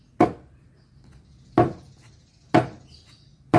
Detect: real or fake real